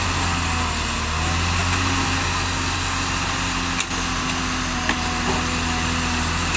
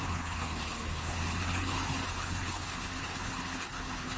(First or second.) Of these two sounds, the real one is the first